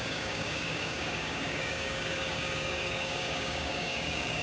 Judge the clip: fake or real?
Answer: fake